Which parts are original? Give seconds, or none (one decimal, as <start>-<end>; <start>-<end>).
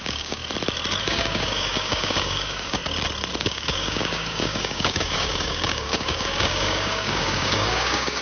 0.4-1.0; 2.8-3.4